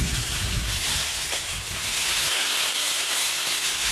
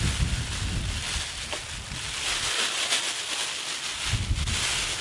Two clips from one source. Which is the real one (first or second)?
second